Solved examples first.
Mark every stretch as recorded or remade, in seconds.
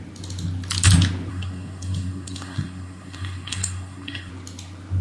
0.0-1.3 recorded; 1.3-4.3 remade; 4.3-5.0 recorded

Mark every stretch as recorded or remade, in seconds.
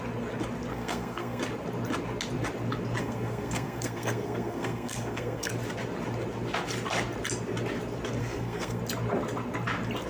0.0-0.7 recorded; 0.7-1.4 remade; 1.4-3.0 recorded; 3.0-5.5 remade; 5.5-8.2 recorded; 8.2-8.8 remade; 8.8-10.1 recorded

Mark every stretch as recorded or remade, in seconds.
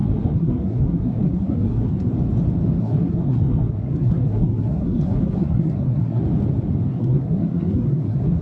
0.0-2.1 remade; 2.1-2.8 recorded; 2.8-6.2 remade; 6.2-6.9 recorded; 6.9-8.4 remade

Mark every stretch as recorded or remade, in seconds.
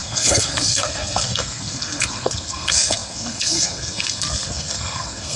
0.0-5.4 remade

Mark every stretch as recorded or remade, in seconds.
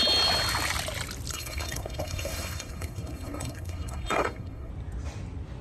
0.0-1.3 recorded; 1.3-4.7 remade; 4.7-5.6 recorded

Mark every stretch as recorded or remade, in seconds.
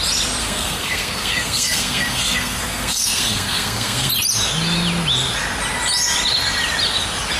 0.0-0.4 recorded; 0.4-4.1 remade; 4.1-7.4 recorded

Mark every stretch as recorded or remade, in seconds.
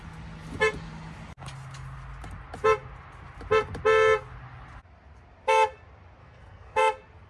0.0-6.2 recorded; 6.2-6.8 remade; 6.8-7.3 recorded